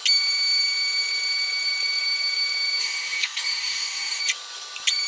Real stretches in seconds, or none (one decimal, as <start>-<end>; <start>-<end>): 0.0-2.8; 4.2-5.1